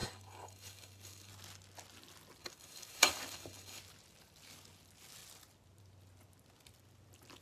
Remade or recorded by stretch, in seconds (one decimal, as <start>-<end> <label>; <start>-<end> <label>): 0.0-1.3 remade; 1.3-2.4 recorded; 2.4-3.8 remade; 3.8-7.4 recorded